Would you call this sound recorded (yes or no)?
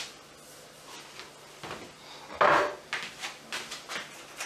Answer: yes